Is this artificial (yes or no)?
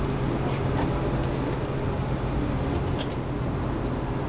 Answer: no